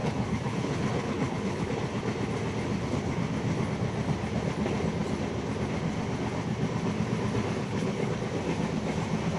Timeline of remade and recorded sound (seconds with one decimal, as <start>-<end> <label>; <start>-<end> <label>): 0.0-1.7 remade; 1.7-7.6 recorded; 7.6-8.2 remade; 8.2-9.4 recorded